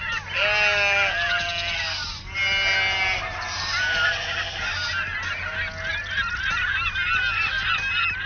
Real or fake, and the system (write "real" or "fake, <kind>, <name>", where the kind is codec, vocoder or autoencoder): real